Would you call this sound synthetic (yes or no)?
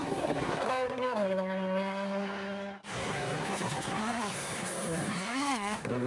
yes